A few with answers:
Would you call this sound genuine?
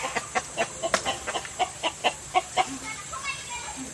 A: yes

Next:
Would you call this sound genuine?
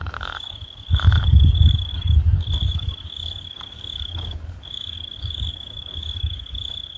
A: no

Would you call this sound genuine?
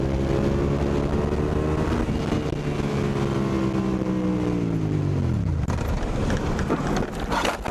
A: yes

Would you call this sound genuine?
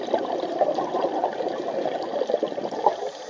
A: yes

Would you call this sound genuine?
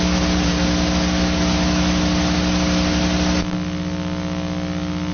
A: yes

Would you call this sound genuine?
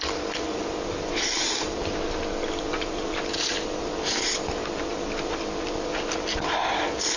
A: no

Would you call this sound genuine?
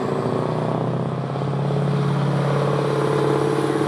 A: yes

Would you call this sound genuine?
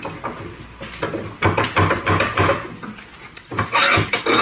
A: yes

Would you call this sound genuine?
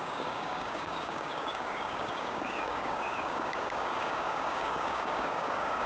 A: no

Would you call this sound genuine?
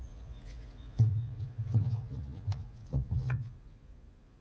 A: no